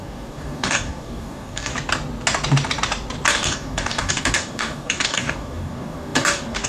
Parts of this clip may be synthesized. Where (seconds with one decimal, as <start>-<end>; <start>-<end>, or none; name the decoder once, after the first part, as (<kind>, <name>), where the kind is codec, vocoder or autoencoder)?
0.0-1.7 (codec, DAC); 3.3-6.7